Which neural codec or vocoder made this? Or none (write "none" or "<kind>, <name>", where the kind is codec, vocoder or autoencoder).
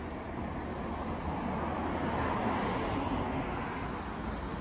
none